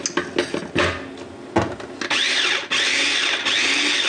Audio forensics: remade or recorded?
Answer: recorded